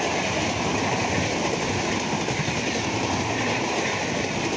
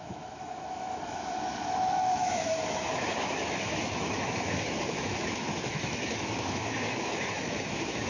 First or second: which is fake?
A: second